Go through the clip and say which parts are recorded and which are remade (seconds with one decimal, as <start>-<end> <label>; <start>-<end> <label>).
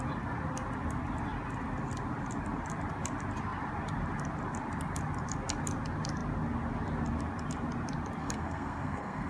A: 0.0-8.2 recorded; 8.2-9.3 remade